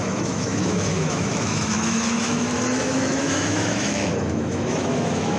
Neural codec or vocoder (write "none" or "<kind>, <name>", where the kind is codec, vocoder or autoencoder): autoencoder, DAC-VAE